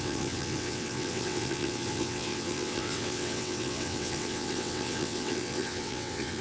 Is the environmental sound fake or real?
fake